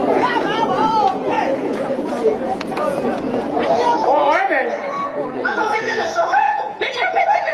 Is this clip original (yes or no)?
no